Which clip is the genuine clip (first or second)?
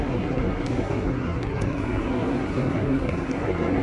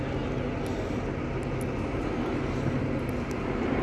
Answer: second